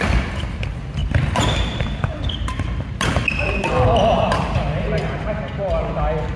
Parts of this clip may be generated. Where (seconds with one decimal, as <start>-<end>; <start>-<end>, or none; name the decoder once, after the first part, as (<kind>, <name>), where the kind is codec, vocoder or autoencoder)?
1.0-3.1 (vocoder, BigVGAN v2); 4.0-5.2

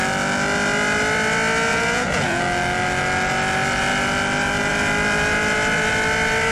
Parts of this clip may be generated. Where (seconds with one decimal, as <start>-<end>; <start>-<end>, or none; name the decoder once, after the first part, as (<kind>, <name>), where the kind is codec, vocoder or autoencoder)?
1.7-2.4 (vocoder, Vocos)

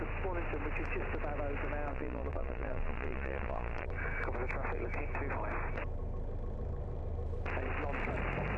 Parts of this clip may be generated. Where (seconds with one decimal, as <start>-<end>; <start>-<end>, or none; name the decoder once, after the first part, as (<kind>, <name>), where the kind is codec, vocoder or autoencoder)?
1.9-3.9 (vocoder, Vocos)

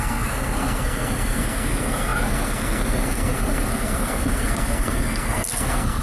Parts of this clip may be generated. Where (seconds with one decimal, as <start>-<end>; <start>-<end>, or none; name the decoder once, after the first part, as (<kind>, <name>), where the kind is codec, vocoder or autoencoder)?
0.0-6.0 (codec, SNAC)